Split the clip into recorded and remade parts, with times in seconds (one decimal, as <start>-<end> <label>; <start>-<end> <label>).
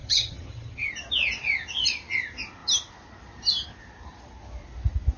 0.0-0.9 remade; 0.9-5.2 recorded